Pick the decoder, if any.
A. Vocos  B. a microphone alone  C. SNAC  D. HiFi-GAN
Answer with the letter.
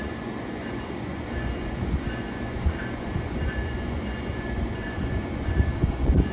A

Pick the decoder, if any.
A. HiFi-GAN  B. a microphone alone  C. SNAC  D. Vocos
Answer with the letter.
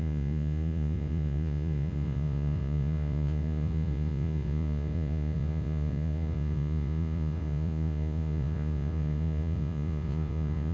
D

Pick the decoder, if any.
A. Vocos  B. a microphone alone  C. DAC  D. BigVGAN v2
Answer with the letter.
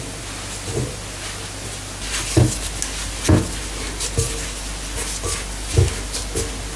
B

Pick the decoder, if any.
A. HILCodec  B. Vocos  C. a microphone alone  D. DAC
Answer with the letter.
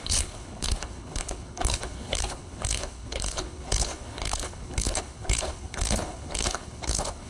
A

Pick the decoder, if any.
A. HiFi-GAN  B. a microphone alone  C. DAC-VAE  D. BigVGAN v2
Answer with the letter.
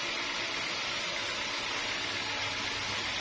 B